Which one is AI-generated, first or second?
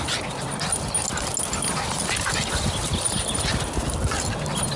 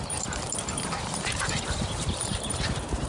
second